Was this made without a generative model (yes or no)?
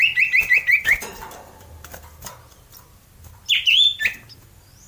yes